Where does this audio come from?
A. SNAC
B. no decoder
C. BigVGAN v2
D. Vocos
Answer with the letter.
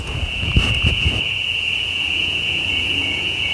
D